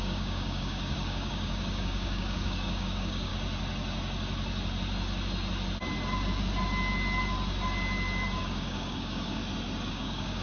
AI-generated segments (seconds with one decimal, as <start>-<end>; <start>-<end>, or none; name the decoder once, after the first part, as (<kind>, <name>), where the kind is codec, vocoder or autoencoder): 0.0-3.3 (codec, DAC); 8.4-9.4; 9.9-10.4